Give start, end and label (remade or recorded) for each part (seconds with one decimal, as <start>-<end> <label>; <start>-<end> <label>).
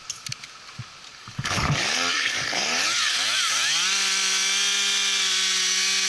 0.0-1.1 recorded; 1.1-3.1 remade; 3.1-6.1 recorded